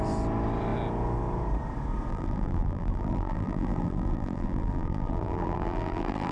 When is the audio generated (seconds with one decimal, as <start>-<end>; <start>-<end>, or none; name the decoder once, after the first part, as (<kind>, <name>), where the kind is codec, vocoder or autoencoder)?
2.1-6.3 (vocoder, BigVGAN v2)